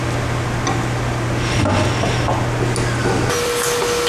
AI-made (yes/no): no